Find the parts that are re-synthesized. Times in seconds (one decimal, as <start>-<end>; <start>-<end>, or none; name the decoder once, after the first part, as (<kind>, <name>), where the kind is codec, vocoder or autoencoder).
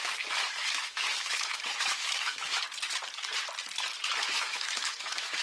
0.0-2.6 (autoencoder, DAC-VAE); 4.2-5.4